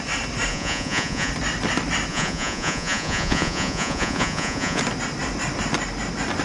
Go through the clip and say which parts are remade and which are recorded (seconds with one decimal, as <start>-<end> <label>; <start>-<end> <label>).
0.0-0.5 recorded; 0.5-1.3 remade; 1.3-2.1 recorded; 2.1-4.8 remade; 4.8-6.4 recorded